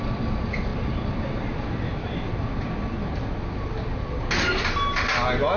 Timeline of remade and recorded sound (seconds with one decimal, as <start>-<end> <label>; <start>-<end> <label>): 0.0-5.6 recorded